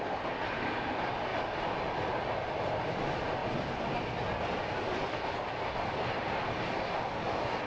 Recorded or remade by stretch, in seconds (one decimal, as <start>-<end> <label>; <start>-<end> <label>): 0.0-7.7 recorded